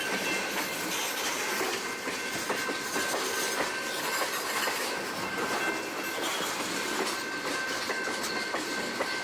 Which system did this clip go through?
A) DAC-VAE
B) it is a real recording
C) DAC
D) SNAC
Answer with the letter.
B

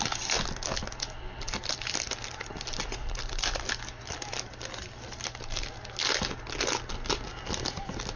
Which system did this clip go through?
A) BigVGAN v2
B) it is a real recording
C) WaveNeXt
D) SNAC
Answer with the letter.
B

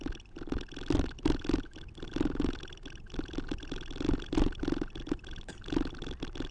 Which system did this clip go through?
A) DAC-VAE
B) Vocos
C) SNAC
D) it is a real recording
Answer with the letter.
D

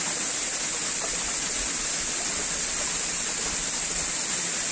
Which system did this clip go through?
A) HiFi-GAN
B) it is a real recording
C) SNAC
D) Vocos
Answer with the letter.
B